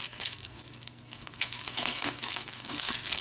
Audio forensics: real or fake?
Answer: fake